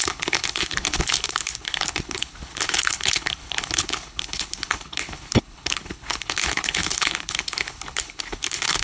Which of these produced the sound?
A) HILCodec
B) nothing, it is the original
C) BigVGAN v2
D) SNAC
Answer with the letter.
A